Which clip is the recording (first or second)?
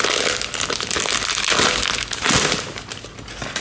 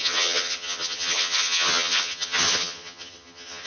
first